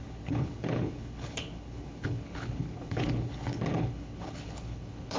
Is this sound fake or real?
fake